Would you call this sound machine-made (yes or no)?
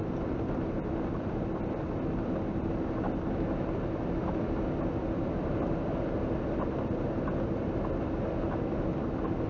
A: no